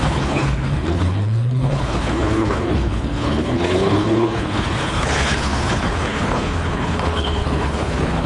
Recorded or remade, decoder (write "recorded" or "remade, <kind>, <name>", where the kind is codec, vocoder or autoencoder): remade, codec, HILCodec